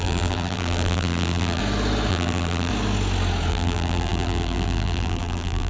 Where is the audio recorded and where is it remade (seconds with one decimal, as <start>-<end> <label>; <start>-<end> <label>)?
0.0-1.6 remade; 1.6-2.1 recorded; 2.1-2.7 remade; 2.7-3.5 recorded; 3.5-5.7 remade